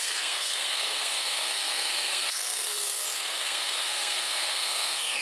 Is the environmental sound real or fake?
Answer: fake